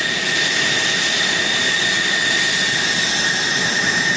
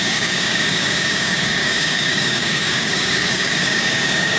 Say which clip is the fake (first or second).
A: second